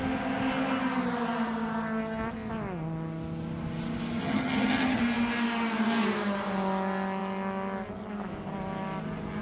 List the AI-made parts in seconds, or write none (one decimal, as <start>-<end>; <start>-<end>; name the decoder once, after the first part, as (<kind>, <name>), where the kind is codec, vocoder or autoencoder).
4.2-5.0 (vocoder, HiFi-GAN)